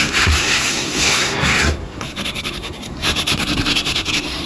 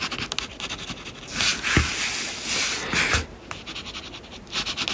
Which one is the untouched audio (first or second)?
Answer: second